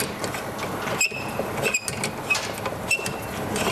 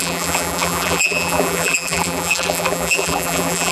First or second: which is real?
first